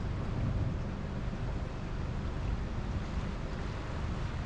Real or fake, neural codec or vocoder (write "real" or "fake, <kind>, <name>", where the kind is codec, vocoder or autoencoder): real